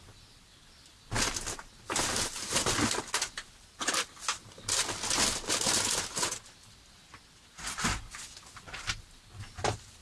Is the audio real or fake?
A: real